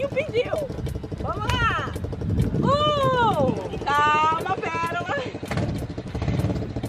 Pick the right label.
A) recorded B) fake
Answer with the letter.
A